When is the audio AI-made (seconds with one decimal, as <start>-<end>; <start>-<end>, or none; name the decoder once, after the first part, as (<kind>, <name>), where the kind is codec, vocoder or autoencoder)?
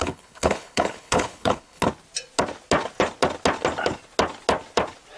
0.0-1.8 (codec, HILCodec)